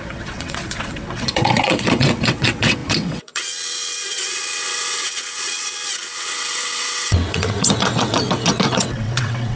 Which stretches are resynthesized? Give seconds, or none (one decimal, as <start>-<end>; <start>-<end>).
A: 0.0-9.6